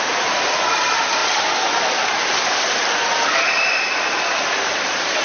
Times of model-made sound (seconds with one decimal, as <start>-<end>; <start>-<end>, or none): none